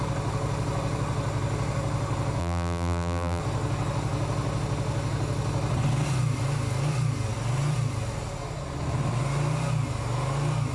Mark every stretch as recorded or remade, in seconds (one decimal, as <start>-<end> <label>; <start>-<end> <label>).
0.0-2.4 recorded; 2.4-3.4 remade; 3.4-10.7 recorded